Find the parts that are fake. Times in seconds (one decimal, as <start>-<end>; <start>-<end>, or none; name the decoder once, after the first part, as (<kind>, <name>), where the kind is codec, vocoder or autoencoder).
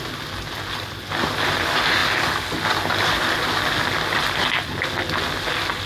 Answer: none